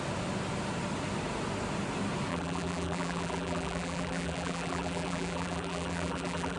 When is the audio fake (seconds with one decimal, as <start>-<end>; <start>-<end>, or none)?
2.3-6.6